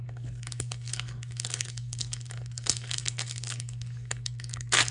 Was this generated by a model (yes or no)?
yes